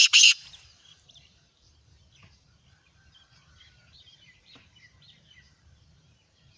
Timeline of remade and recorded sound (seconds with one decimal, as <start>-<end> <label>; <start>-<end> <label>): 0.0-6.6 remade